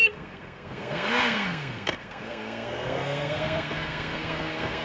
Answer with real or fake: fake